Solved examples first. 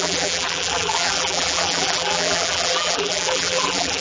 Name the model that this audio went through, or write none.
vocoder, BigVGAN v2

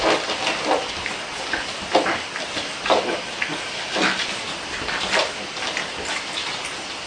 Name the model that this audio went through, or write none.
none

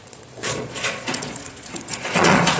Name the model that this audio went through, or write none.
vocoder, Vocos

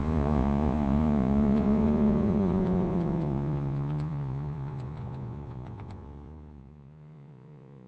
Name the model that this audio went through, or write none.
vocoder, Vocos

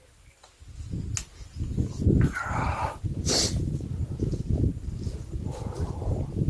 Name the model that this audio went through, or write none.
none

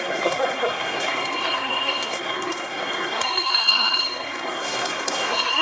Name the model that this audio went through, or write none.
codec, SNAC